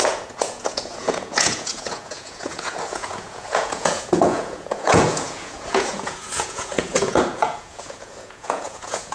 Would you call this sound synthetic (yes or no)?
yes